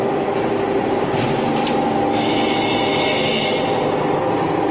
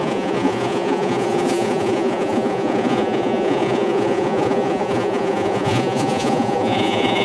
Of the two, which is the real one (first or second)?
first